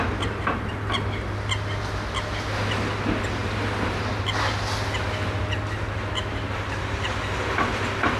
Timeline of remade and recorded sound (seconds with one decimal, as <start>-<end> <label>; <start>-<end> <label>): 0.0-8.2 recorded